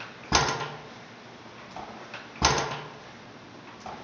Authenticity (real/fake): real